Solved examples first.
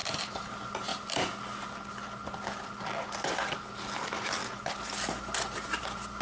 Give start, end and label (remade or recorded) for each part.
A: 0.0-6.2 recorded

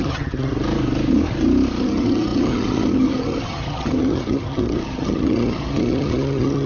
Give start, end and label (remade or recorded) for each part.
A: 0.0-0.5 remade; 0.5-1.8 recorded; 1.8-6.7 remade

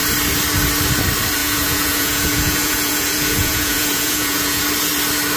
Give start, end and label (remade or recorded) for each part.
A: 0.0-1.4 recorded; 1.4-4.6 remade; 4.6-5.4 recorded

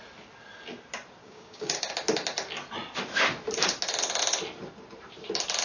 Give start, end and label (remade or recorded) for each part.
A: 0.0-1.2 recorded; 1.2-1.9 remade; 1.9-5.6 recorded